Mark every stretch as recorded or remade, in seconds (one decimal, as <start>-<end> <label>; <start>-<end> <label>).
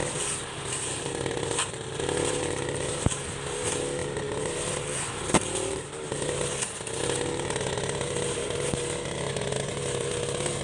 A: 0.0-3.0 remade; 3.0-4.0 recorded; 4.0-5.1 remade; 5.1-10.6 recorded